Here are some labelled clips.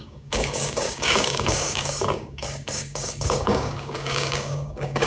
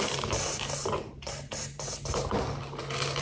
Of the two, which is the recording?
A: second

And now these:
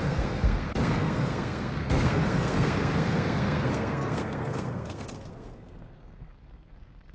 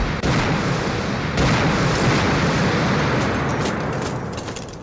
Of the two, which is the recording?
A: second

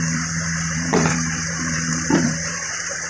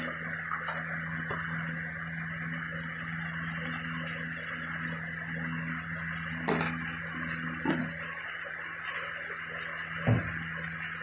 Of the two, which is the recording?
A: second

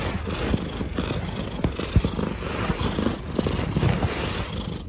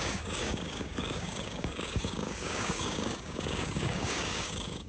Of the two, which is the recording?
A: first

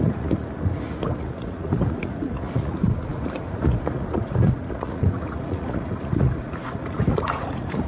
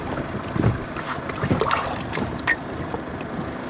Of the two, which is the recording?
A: second